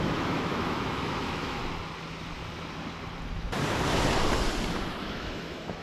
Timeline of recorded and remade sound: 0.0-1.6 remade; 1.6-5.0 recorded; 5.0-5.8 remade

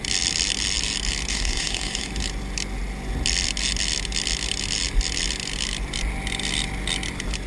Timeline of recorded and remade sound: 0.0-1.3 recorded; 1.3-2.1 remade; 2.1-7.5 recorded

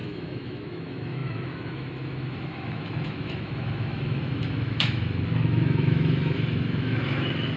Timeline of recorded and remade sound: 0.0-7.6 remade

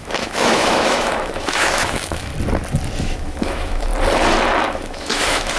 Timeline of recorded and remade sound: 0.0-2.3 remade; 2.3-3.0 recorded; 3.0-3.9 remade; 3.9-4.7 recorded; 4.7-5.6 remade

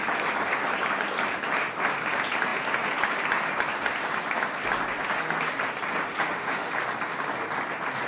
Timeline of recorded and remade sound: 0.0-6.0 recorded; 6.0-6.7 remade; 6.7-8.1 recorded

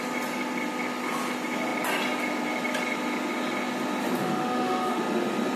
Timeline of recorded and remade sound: 0.0-4.2 recorded; 4.2-5.0 remade; 5.0-5.6 recorded